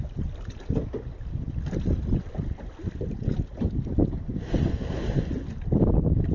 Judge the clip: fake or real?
real